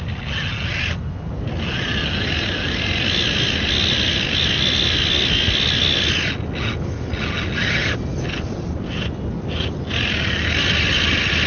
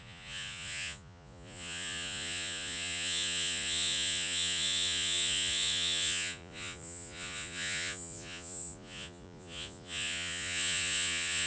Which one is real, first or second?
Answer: first